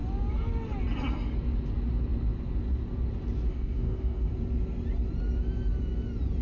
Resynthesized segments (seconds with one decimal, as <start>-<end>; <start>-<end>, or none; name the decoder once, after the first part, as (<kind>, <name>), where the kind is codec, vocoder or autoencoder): 3.5-4.3 (codec, DAC)